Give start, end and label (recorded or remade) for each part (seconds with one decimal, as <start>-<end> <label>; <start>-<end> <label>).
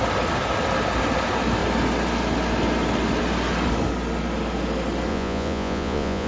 0.0-5.1 recorded; 5.1-6.3 remade